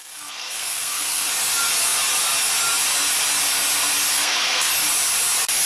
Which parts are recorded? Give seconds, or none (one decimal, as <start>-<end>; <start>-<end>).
1.3-4.1; 4.7-5.7